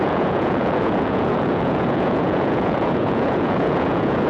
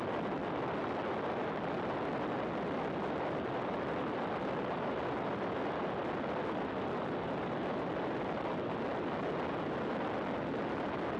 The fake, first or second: first